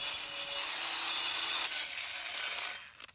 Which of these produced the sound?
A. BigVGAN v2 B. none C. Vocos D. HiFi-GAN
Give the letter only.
B